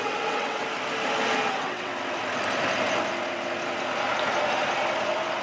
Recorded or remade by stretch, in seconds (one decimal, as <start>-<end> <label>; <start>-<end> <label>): 0.0-0.6 remade; 0.6-1.5 recorded; 1.5-1.9 remade; 1.9-5.4 recorded